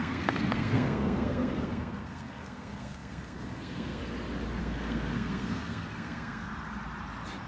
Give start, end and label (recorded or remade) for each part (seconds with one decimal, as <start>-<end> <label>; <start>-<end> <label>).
0.0-4.0 remade; 4.0-4.6 recorded; 4.6-6.5 remade; 6.5-7.5 recorded